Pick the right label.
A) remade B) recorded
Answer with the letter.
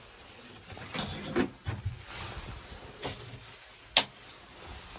B